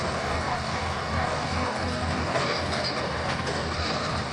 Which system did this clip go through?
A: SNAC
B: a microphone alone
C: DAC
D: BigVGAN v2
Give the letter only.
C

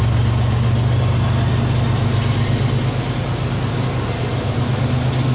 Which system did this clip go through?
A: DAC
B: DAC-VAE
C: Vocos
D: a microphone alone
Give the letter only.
D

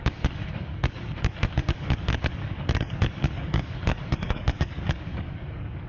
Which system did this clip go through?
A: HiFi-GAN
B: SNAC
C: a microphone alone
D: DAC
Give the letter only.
D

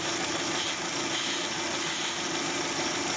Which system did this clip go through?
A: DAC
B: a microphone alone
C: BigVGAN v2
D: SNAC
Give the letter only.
B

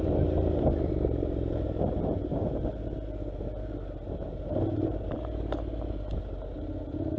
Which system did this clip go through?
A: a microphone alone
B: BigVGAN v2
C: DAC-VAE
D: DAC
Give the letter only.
A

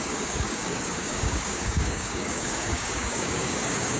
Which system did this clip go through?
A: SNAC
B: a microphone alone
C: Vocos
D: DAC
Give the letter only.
D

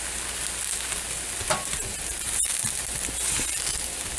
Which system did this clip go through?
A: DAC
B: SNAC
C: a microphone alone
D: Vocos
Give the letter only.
C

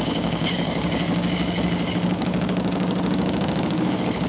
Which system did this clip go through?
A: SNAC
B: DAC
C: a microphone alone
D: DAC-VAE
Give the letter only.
B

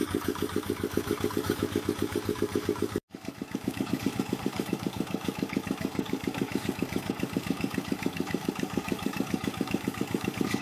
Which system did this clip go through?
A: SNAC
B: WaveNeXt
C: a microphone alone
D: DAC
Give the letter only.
D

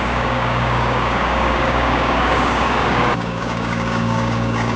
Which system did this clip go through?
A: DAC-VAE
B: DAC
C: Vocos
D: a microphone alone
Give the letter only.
B